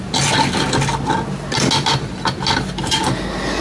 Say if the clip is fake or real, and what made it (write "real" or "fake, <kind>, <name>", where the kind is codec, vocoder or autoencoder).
real